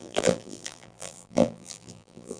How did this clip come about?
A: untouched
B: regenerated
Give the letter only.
B